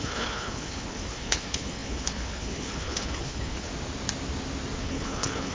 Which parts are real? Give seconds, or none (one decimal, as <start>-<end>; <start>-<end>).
3.7-4.8